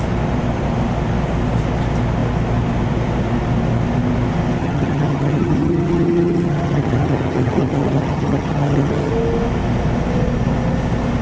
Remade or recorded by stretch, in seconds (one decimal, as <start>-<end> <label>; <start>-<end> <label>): 0.0-4.6 recorded; 4.6-9.1 remade; 9.1-11.2 recorded